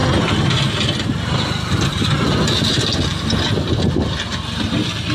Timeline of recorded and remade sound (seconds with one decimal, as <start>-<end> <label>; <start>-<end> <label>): 0.0-5.1 recorded